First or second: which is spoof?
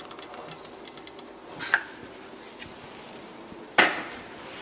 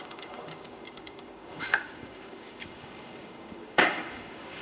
second